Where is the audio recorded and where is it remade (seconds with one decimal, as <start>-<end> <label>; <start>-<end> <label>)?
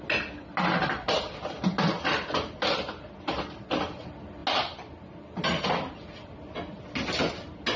0.0-7.8 recorded